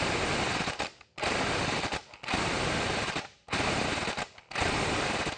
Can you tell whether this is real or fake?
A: real